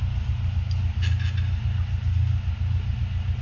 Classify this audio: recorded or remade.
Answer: recorded